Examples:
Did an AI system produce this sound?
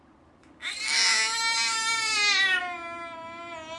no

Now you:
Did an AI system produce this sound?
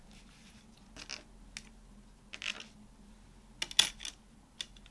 no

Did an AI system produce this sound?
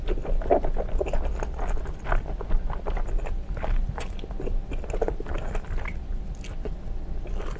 no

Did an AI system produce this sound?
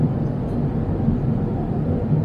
no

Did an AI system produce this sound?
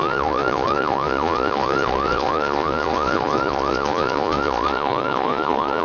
yes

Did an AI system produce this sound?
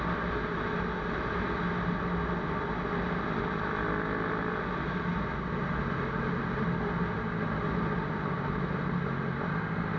no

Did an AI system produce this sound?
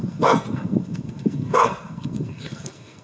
yes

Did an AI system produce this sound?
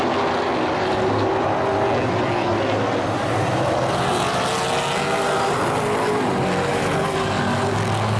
no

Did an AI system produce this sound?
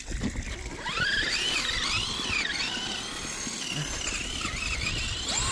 no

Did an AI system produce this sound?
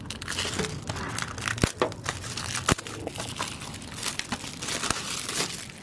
no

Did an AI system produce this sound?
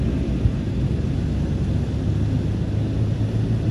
no